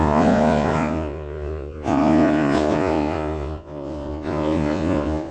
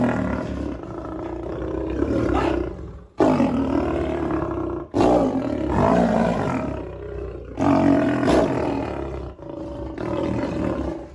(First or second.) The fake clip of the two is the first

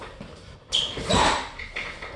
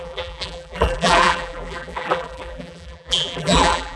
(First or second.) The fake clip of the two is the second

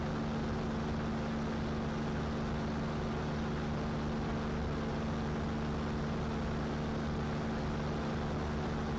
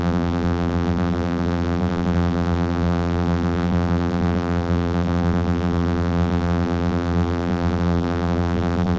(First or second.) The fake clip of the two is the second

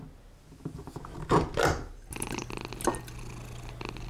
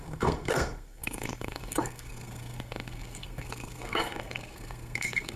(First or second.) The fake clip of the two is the second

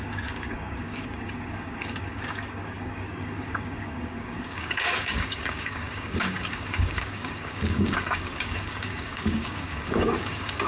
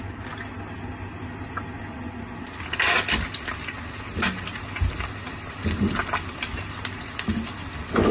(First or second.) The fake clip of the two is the first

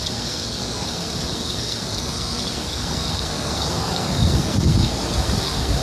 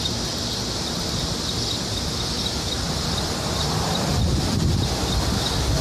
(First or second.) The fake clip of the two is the first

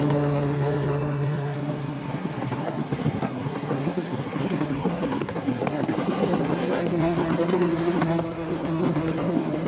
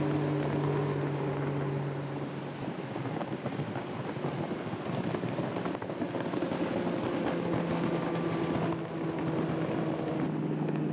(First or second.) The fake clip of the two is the first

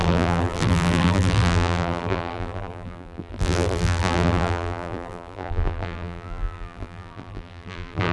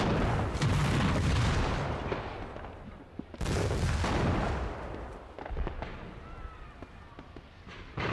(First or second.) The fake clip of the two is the first